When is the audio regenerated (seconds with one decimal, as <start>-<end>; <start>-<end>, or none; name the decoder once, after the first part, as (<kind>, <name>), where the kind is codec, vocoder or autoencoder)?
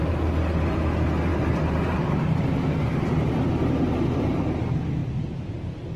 1.3-4.4 (vocoder, BigVGAN v2); 5.0-6.0